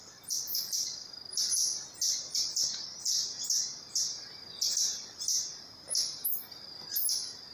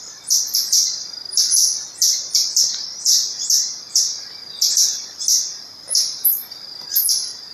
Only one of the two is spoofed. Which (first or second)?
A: second